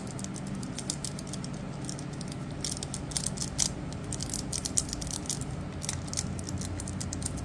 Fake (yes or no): no